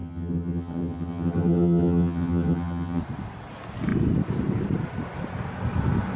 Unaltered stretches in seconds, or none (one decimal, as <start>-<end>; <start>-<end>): 3.0-6.2